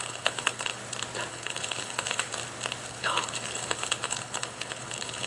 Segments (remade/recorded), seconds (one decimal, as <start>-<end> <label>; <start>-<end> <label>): 0.0-0.8 remade; 0.8-1.3 recorded; 1.3-2.3 remade; 2.3-2.9 recorded; 2.9-5.3 remade